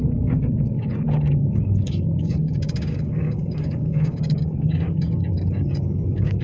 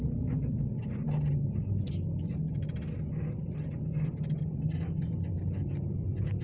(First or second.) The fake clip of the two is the first